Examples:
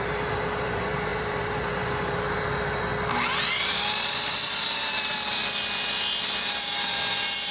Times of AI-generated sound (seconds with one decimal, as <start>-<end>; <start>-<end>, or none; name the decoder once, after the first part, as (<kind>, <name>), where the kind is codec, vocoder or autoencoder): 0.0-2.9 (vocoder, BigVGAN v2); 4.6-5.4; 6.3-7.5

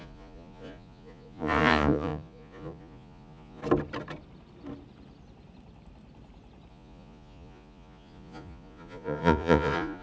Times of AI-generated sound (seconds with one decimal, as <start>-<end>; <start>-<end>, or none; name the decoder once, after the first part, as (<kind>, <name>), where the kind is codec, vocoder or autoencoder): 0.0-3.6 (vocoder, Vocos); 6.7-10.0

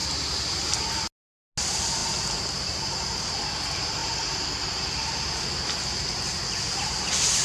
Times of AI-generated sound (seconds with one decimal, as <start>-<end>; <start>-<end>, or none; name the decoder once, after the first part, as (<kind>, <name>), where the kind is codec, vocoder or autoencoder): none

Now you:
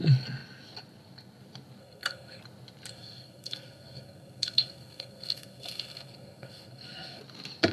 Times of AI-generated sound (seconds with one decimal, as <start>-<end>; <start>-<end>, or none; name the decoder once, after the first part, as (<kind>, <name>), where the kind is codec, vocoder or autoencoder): 1.8-2.4 (codec, SNAC); 2.9-7.2

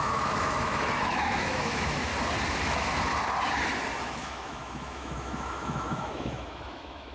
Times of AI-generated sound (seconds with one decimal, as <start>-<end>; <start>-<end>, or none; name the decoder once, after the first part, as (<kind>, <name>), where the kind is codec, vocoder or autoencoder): 0.0-2.1 (autoencoder, DAC-VAE); 2.6-3.1; 4.0-7.1

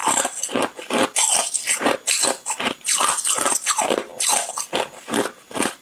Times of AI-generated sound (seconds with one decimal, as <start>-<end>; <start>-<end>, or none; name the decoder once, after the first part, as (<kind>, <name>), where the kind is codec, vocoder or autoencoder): 3.5-4.1 (vocoder, BigVGAN v2); 5.0-5.8

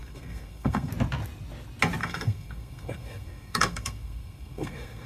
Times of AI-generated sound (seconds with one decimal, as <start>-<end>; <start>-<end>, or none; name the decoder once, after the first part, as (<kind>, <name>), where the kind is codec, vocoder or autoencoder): 0.0-0.9 (codec, SNAC); 2.0-5.1